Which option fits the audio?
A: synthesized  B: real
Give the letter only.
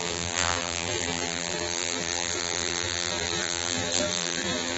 A